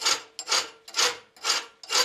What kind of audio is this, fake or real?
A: real